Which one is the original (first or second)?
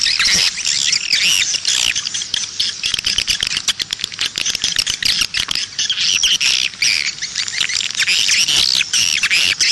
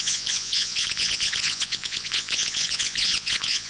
first